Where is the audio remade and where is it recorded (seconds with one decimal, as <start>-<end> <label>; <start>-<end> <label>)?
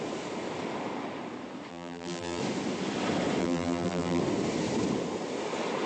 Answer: 0.0-1.7 recorded; 1.7-2.4 remade; 2.4-3.4 recorded; 3.4-4.2 remade; 4.2-5.9 recorded